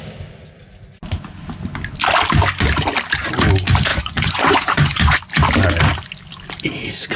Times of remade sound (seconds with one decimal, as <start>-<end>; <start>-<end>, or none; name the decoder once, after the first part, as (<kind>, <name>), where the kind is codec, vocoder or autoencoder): 3.9-5.2 (vocoder, Vocos)

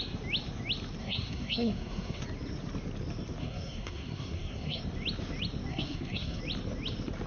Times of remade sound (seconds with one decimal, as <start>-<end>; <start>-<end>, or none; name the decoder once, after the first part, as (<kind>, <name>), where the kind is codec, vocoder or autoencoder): 1.0-2.2 (codec, SNAC); 3.4-4.8; 5.7-6.4

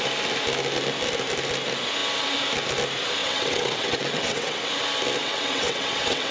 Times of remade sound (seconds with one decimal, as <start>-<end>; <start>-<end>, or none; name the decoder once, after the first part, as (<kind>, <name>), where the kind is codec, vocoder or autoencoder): 3.2-4.7 (vocoder, WaveNeXt); 5.2-6.3

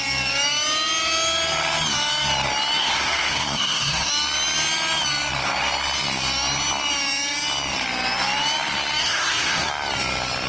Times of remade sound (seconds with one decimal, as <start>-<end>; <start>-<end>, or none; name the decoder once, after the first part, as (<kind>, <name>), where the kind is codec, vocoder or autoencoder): 2.8-4.1 (codec, SNAC); 9.0-9.7

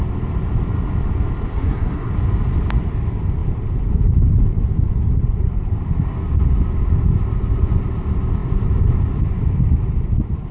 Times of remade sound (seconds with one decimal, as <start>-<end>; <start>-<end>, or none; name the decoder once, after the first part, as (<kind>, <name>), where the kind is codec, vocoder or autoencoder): 1.5-2.1 (codec, SNAC)